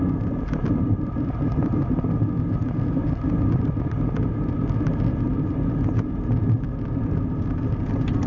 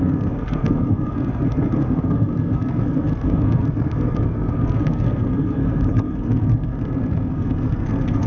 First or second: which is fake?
second